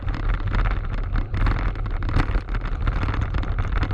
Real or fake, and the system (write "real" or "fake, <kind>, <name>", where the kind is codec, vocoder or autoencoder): real